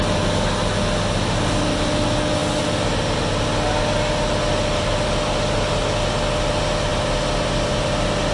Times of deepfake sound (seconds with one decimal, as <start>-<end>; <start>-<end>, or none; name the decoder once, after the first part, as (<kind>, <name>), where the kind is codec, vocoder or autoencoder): none